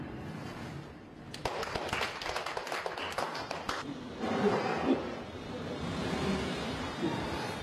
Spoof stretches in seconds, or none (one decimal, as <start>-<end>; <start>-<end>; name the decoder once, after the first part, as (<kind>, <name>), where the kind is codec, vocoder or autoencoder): 0.0-0.5 (vocoder, BigVGAN v2); 3.1-7.6